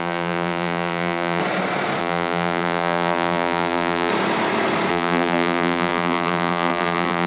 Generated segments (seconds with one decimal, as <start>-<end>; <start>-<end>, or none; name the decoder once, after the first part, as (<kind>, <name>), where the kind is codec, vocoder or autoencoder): 0.0-1.4 (vocoder, BigVGAN v2); 2.0-4.1; 4.9-7.3